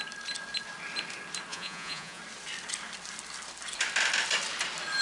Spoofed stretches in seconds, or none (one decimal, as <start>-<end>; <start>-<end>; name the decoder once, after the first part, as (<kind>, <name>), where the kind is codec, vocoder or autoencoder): 1.5-2.2 (vocoder, Vocos)